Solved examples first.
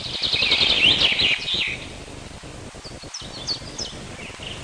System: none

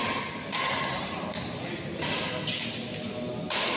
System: none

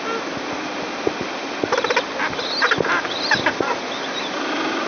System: none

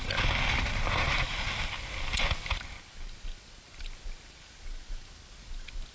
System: none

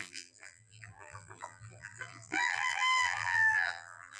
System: vocoder, BigVGAN v2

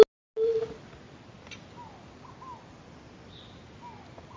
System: none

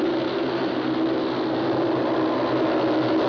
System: none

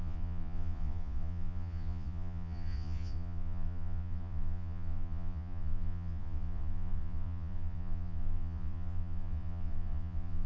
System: vocoder, Vocos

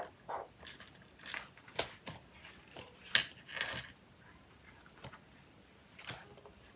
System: none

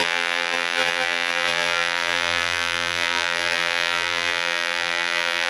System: vocoder, BigVGAN v2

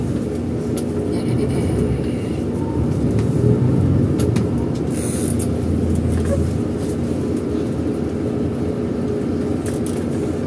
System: none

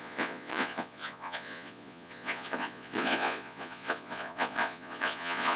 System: vocoder, Vocos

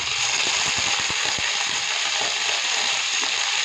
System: none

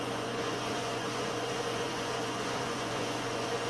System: vocoder, Vocos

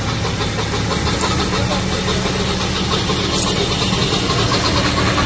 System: none